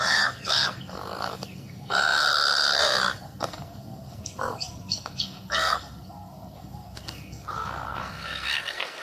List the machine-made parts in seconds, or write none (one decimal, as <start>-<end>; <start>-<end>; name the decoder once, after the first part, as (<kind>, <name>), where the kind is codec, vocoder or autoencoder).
0.0-9.0 (codec, SNAC)